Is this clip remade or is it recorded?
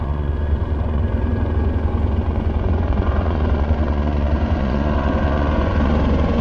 remade